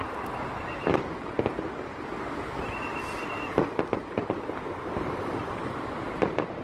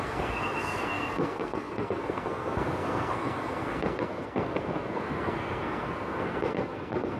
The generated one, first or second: second